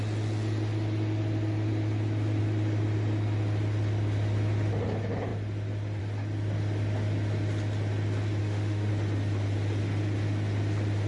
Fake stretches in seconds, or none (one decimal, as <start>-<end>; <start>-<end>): 8.4-8.9